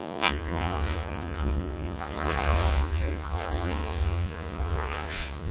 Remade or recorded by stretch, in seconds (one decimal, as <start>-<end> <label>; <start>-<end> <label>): 0.0-5.5 remade